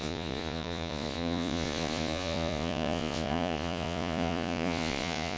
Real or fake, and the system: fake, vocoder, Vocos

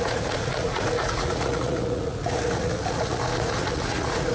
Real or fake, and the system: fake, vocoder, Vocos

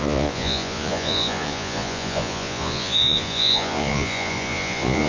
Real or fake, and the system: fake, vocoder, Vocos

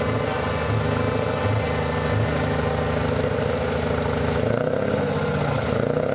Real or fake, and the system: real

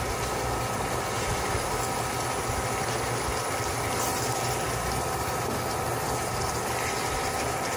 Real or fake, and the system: real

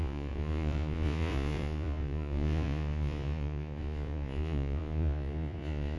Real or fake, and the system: fake, vocoder, Vocos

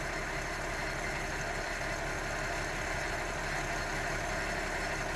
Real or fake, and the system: real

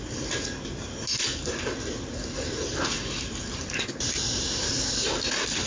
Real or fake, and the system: real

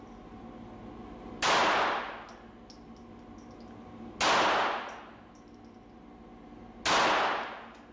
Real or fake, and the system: real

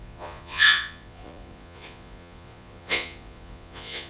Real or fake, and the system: fake, vocoder, Vocos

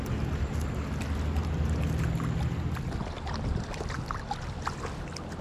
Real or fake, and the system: real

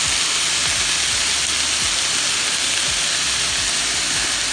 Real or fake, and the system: real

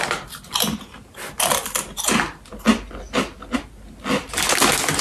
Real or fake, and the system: real